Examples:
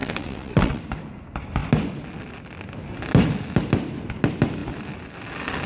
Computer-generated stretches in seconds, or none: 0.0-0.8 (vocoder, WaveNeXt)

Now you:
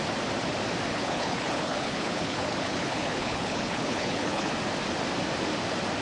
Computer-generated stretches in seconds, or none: 0.9-4.5 (codec, HILCodec)

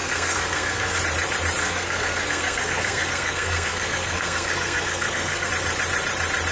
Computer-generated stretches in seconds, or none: 0.0-1.0 (codec, SNAC); 1.6-5.5

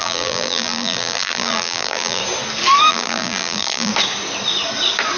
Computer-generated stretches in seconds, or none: 0.0-2.2 (vocoder, BigVGAN v2); 2.9-3.9